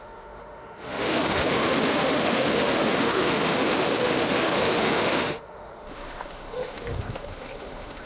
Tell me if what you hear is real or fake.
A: fake